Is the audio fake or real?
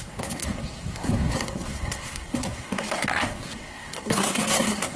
fake